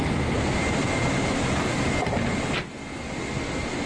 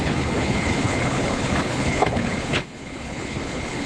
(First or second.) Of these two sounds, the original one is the first